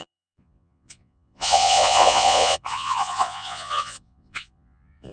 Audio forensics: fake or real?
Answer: fake